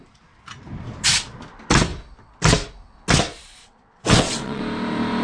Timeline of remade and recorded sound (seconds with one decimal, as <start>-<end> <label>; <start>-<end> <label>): 0.0-3.6 recorded; 3.6-4.6 remade; 4.6-5.2 recorded